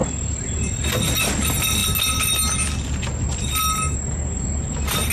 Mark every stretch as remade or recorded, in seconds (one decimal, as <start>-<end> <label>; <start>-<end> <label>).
0.0-5.1 recorded